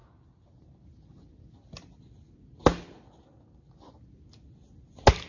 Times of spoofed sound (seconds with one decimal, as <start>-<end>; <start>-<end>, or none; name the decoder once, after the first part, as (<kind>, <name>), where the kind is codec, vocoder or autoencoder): none